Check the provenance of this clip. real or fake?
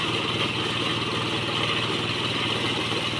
real